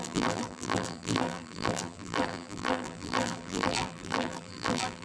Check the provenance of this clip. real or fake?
fake